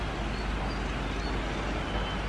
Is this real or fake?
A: real